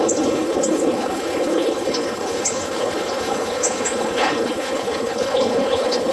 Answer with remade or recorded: remade